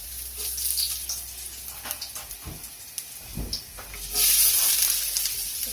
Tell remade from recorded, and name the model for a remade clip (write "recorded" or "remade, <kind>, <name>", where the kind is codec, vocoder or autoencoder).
recorded